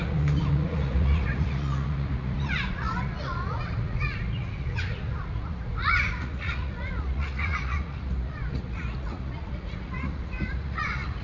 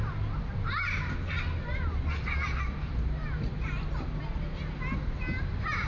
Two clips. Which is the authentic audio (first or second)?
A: second